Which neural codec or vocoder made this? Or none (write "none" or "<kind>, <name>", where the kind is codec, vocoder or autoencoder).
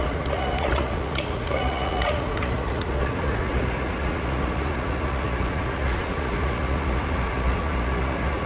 vocoder, Vocos